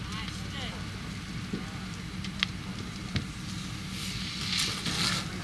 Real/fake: real